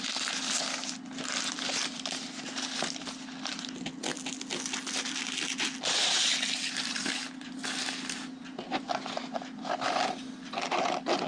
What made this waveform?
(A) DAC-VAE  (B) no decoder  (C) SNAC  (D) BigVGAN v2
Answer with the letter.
B